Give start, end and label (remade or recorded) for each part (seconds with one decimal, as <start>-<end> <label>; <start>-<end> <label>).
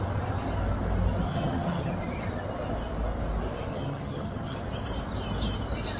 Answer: 0.0-1.3 recorded; 1.3-1.9 remade; 1.9-3.7 recorded; 3.7-4.6 remade; 4.6-6.0 recorded